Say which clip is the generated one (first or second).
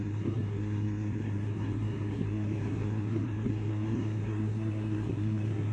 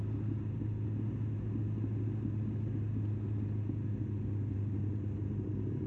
first